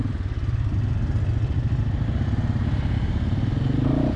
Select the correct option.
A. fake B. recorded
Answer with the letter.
B